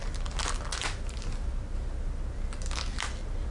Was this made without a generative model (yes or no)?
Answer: yes